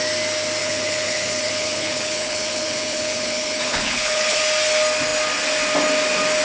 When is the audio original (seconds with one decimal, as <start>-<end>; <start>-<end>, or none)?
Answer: 0.0-0.6; 4.4-6.4